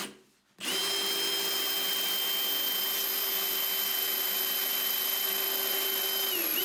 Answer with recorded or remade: recorded